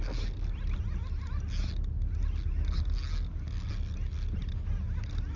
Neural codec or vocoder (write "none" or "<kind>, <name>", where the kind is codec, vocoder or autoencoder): none